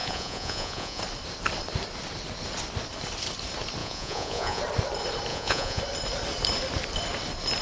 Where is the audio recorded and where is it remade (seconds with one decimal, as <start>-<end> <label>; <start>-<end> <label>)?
0.0-1.0 remade; 1.0-3.8 recorded; 3.8-4.6 remade; 4.6-5.3 recorded; 5.3-5.8 remade; 5.8-7.6 recorded